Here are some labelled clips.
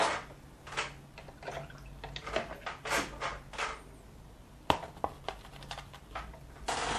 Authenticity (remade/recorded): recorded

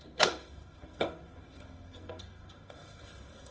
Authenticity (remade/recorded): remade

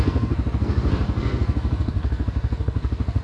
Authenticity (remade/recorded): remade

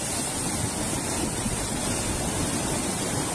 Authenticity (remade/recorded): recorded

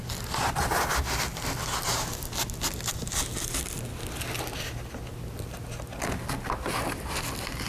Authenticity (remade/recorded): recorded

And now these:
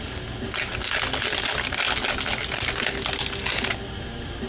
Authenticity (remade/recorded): recorded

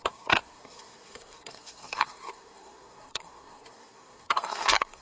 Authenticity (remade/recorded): remade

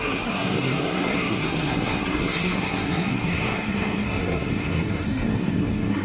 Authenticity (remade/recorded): remade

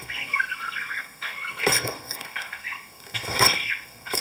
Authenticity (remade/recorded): remade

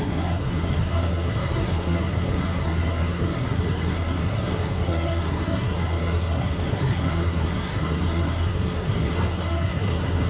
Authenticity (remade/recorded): remade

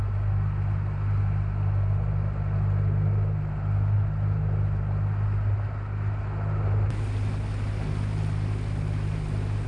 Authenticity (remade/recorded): recorded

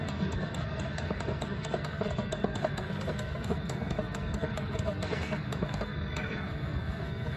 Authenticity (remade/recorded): remade